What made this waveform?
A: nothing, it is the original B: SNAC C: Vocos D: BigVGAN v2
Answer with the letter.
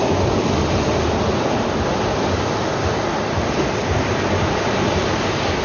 A